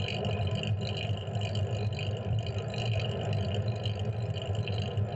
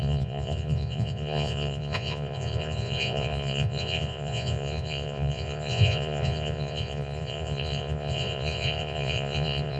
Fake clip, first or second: second